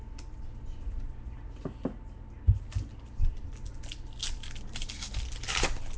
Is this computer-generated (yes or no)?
no